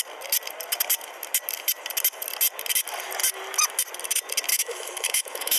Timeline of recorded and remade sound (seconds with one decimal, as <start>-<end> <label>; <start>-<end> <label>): 0.0-4.5 recorded; 4.5-5.6 remade